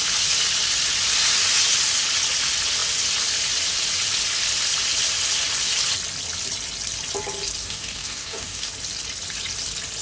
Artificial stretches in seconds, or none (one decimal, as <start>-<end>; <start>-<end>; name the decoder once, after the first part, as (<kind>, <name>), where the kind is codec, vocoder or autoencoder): 7.6-8.7 (codec, DAC)